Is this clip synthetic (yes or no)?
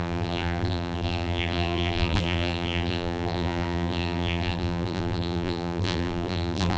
yes